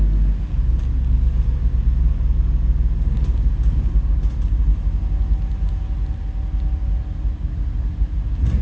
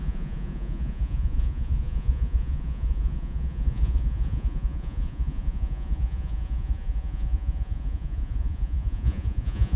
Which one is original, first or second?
first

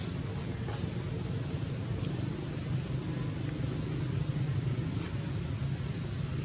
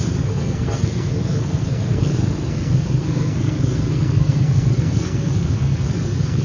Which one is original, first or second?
first